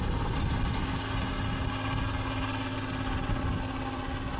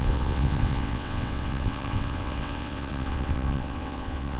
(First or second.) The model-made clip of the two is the second